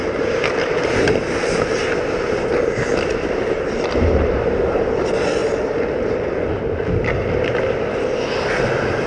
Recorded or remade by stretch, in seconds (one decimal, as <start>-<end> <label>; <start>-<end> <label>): 0.0-5.4 recorded; 5.4-5.9 remade; 5.9-9.1 recorded